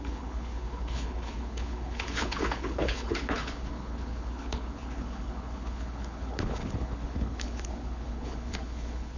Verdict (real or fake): fake